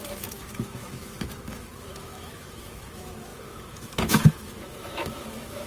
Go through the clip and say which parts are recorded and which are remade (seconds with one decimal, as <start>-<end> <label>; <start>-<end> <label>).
0.0-5.7 remade